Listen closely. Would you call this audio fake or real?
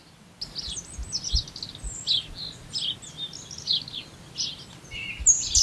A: real